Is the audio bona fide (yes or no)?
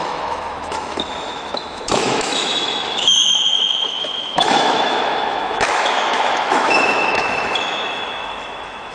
no